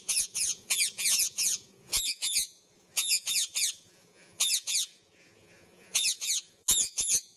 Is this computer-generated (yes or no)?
yes